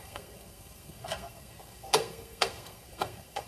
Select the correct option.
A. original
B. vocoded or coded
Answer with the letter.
B